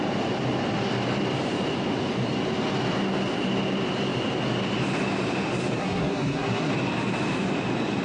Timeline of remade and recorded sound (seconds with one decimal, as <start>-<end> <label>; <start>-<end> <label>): 0.0-5.8 recorded; 5.8-6.7 remade; 6.7-8.0 recorded